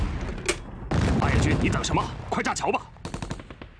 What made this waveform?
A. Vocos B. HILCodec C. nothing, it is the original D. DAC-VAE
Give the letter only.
C